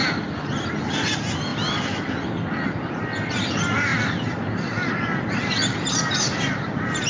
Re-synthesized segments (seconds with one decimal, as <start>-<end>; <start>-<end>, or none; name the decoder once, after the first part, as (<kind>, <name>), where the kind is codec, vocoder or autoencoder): none